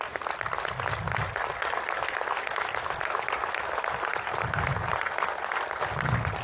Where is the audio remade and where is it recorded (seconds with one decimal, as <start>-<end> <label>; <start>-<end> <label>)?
0.0-6.4 recorded